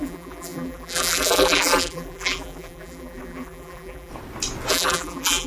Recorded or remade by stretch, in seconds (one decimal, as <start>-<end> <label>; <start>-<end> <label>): 0.0-4.1 remade; 4.1-4.7 recorded; 4.7-5.5 remade